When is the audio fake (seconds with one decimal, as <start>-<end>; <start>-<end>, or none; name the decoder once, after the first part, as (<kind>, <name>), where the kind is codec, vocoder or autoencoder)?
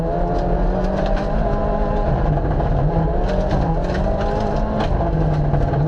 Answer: none